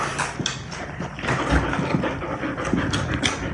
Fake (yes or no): no